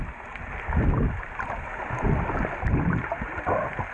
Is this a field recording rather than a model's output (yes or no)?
yes